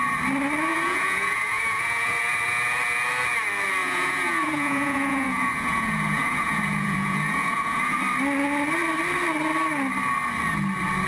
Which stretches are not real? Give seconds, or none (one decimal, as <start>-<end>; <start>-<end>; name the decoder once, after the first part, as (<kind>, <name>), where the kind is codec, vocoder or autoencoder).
0.7-2.2 (vocoder, Vocos); 3.8-8.0